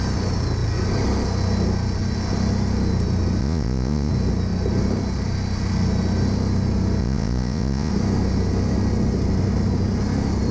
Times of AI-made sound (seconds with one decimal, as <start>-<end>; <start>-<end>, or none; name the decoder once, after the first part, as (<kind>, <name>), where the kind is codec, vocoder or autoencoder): 3.4-4.1 (vocoder, Vocos); 7.0-7.9